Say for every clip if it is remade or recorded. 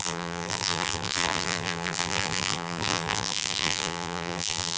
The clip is remade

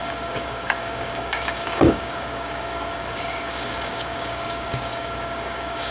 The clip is remade